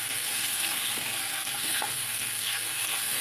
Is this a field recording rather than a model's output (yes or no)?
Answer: no